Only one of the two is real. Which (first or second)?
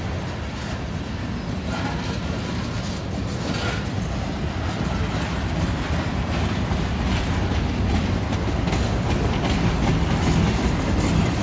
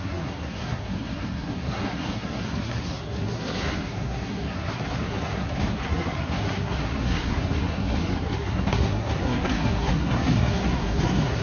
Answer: first